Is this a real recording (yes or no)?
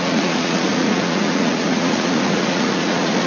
no